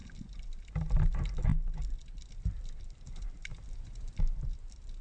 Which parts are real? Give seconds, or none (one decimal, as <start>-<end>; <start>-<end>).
1.5-2.3